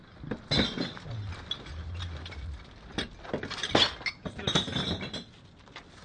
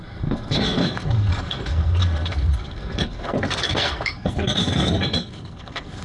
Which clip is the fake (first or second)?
second